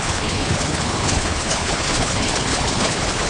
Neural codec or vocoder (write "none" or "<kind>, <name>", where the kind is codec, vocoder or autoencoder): codec, HILCodec